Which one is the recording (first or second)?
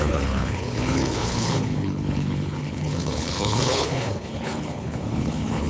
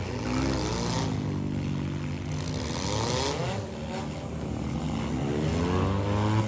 second